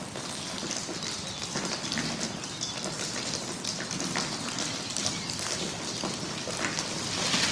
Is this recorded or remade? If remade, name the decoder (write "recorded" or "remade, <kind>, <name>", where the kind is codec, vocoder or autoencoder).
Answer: recorded